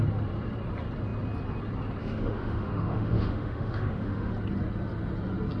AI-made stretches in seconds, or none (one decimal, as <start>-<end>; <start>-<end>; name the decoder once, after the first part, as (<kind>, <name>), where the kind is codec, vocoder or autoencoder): 2.0-4.3 (autoencoder, DAC-VAE)